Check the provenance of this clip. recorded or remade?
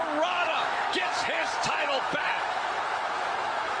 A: remade